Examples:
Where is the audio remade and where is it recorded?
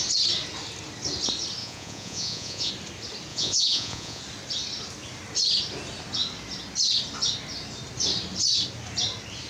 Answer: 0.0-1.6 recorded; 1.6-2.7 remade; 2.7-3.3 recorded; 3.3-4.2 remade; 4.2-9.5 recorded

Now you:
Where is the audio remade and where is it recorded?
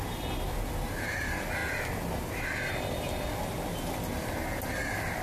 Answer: 0.0-5.2 recorded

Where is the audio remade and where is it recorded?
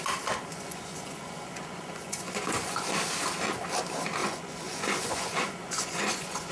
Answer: 0.0-0.5 recorded; 0.5-2.9 remade; 2.9-4.2 recorded; 4.2-6.5 remade